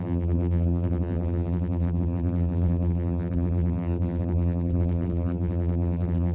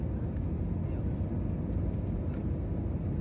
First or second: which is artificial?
first